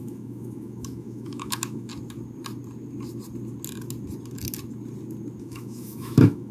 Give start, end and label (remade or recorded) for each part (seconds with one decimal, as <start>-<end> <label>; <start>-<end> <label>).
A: 0.0-1.9 remade; 1.9-5.4 recorded; 5.4-6.5 remade